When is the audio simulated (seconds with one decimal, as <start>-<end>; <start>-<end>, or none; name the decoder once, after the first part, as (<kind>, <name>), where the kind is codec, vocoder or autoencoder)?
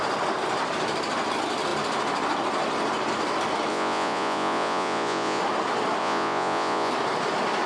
3.7-5.4 (vocoder, Vocos); 6.0-6.9